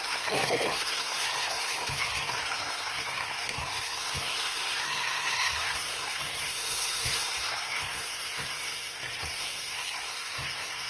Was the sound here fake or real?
fake